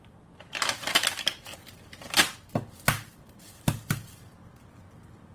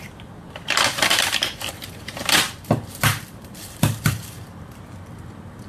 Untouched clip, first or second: first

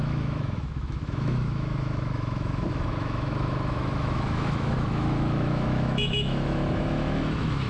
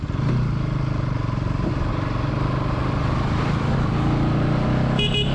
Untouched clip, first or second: second